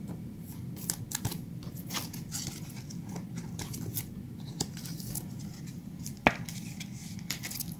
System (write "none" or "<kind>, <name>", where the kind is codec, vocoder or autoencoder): none